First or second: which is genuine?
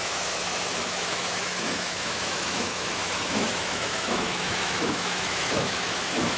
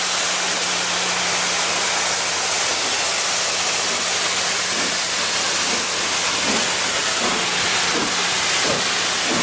second